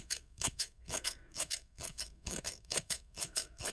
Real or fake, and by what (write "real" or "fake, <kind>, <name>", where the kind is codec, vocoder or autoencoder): fake, codec, SNAC